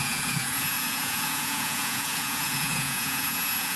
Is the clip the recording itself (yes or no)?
no